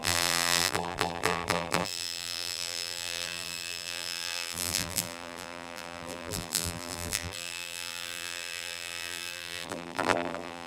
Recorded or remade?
remade